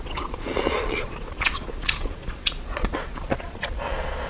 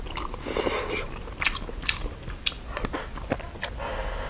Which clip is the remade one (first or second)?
first